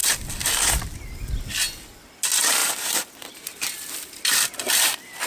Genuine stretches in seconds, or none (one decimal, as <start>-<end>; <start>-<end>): 0.5-2.6; 4.8-5.3